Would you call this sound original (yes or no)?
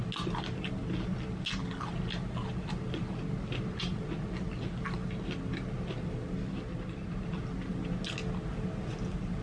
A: yes